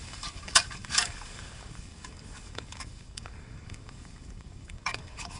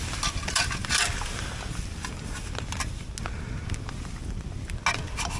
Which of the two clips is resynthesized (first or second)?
first